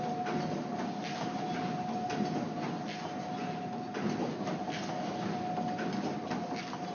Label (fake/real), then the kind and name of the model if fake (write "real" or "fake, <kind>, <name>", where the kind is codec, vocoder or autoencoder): real